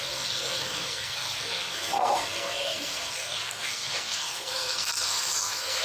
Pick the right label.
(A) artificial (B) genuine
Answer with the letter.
A